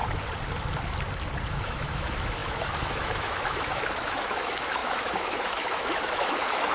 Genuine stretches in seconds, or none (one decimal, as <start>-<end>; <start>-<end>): 0.0-1.5